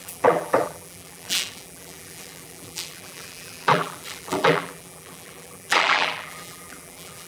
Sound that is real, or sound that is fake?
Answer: fake